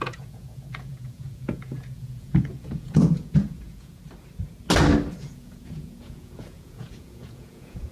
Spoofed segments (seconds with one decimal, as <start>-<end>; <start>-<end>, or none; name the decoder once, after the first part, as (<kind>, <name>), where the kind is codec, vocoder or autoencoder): 0.0-4.0 (vocoder, Vocos); 5.2-7.9